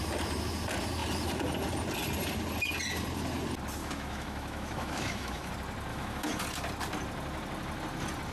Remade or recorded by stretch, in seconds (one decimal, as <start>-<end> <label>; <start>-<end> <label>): 0.0-3.8 recorded; 3.8-5.5 remade; 5.5-5.9 recorded; 5.9-6.4 remade; 6.4-8.3 recorded